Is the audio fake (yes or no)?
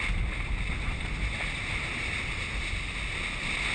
no